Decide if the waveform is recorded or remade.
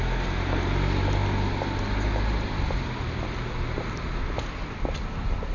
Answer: recorded